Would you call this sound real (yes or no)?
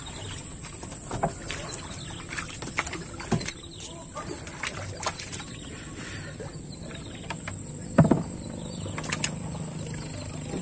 yes